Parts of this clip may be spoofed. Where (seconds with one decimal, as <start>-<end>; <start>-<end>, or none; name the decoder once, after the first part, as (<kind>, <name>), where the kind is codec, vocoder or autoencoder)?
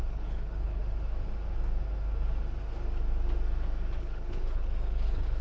0.0-0.8 (codec, HILCodec); 4.0-5.4